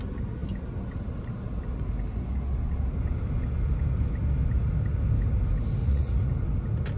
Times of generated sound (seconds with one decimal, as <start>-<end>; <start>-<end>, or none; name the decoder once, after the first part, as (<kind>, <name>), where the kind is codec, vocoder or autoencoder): 5.8-6.3 (vocoder, Vocos)